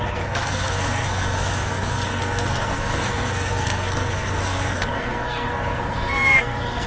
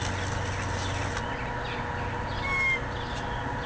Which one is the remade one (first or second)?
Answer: first